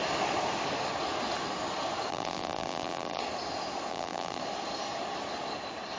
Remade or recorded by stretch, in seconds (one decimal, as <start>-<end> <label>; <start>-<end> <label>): 0.0-2.1 recorded; 2.1-3.2 remade; 3.2-3.9 recorded; 3.9-4.4 remade; 4.4-6.0 recorded